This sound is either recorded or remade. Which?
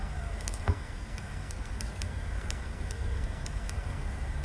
remade